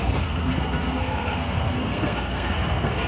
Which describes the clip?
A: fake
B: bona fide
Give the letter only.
A